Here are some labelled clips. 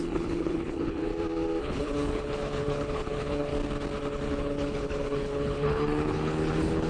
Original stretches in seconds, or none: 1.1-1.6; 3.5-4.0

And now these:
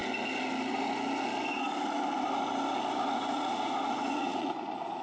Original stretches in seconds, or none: 0.0-3.0

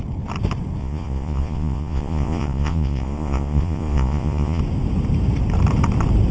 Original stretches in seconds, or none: 0.0-0.8; 4.6-6.3

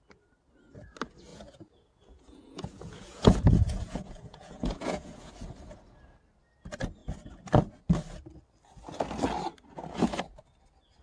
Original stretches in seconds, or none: 0.0-1.3; 5.3-11.0

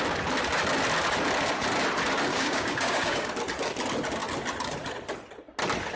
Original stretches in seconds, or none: 0.0-2.3; 3.3-6.0